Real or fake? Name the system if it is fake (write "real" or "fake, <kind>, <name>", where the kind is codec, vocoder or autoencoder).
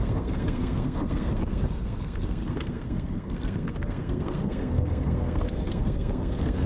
fake, codec, SNAC